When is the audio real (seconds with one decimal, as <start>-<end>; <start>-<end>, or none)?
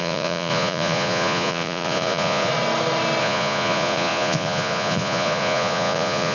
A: 2.5-3.2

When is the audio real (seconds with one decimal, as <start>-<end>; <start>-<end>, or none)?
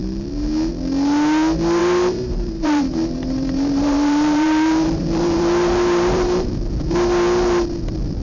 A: 0.0-1.8; 6.5-8.2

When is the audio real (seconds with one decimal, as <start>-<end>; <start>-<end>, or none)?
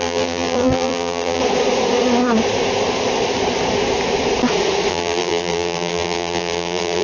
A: 1.4-4.9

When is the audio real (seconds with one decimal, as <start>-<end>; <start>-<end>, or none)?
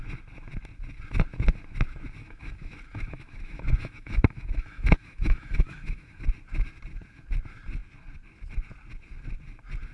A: 0.0-2.2; 6.2-9.9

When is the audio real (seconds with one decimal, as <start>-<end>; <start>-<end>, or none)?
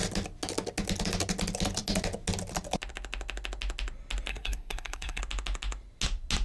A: 0.0-4.3; 5.2-6.4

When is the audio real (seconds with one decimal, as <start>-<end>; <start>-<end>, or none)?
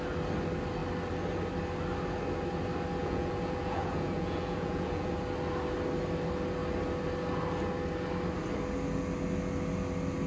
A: 0.0-3.0; 5.1-10.3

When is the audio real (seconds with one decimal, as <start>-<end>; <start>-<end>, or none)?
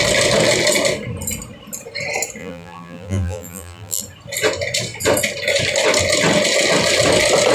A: 0.0-2.4; 4.0-7.5